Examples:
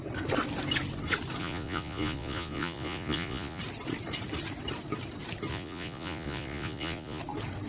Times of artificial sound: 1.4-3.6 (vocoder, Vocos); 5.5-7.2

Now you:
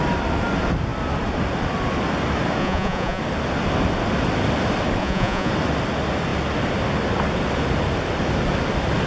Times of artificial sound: 2.6-3.2 (vocoder, Vocos); 5.0-5.5